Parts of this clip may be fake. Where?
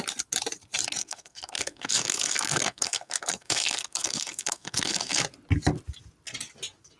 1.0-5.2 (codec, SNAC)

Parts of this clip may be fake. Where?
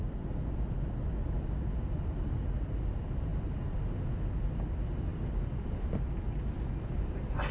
0.0-3.3 (vocoder, BigVGAN v2); 4.4-7.5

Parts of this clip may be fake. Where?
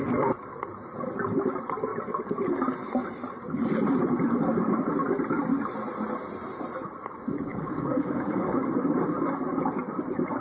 7.5-8.6 (codec, DAC)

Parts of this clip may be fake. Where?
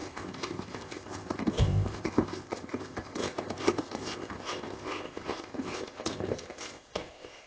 0.0-7.5 (codec, ZipCodec)